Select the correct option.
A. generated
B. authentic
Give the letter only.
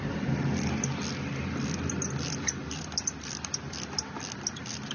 B